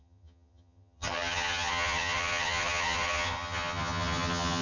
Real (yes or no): no